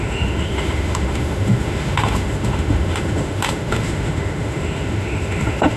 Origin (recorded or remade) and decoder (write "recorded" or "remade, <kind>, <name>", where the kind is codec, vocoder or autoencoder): remade, autoencoder, DAC-VAE